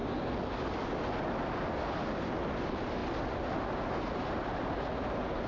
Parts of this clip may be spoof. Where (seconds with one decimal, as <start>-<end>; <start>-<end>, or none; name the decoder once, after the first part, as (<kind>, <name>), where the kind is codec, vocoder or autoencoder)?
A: none